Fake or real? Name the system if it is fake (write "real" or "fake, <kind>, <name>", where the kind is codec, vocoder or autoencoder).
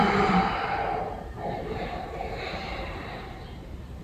fake, vocoder, BigVGAN v2